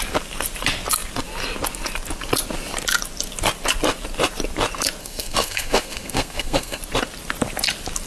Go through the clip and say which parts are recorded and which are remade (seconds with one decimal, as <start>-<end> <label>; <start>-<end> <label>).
0.0-5.0 recorded; 5.0-6.8 remade; 6.8-8.1 recorded